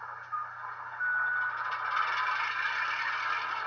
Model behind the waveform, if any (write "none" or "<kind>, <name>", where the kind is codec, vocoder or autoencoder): none